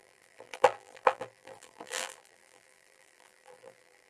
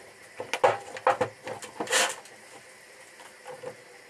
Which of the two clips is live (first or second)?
second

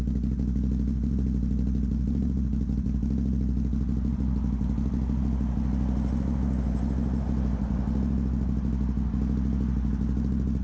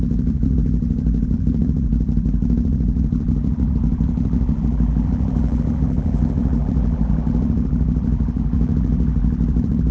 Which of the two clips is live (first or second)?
first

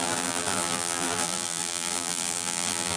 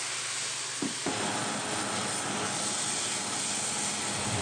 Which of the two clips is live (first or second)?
second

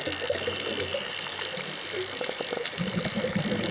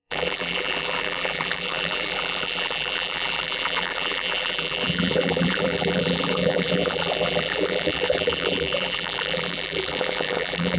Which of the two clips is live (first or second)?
first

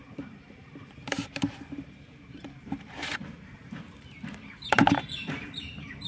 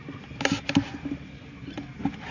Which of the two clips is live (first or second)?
second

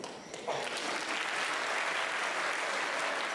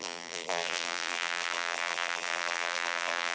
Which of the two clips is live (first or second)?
first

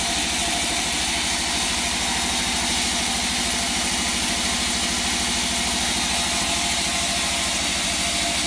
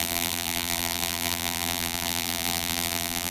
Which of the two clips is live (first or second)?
first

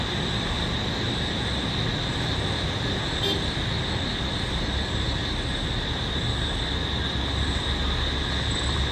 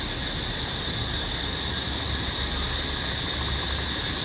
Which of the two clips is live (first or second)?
first